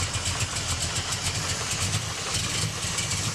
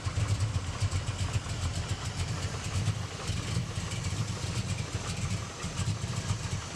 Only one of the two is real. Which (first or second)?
first